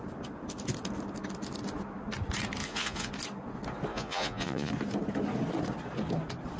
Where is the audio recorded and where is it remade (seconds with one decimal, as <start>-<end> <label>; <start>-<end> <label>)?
0.0-2.6 recorded; 2.6-3.1 remade; 3.1-3.9 recorded; 3.9-4.7 remade; 4.7-6.6 recorded

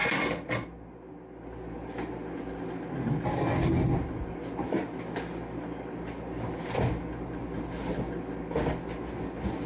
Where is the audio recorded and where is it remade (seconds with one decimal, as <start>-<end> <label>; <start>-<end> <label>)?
0.0-9.7 recorded